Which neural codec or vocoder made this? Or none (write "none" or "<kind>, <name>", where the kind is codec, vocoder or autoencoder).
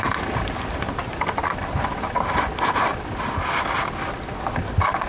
none